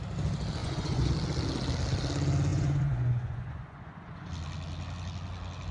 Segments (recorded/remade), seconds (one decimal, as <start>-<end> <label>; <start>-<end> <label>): 0.0-0.6 recorded; 0.6-1.1 remade; 1.1-2.5 recorded; 2.5-4.3 remade; 4.3-5.7 recorded